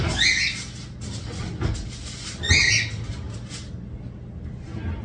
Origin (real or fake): real